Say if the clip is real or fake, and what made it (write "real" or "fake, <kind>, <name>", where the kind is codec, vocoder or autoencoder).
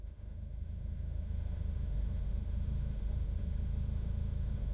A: fake, autoencoder, DAC-VAE